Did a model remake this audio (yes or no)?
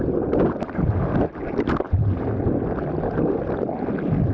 no